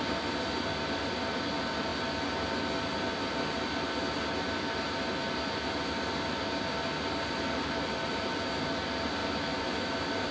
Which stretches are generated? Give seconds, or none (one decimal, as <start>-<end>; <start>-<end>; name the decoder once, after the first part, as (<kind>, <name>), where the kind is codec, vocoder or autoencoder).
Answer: none